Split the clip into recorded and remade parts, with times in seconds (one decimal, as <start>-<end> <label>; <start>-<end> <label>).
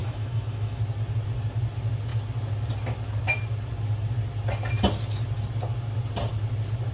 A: 0.0-0.8 remade; 0.8-6.9 recorded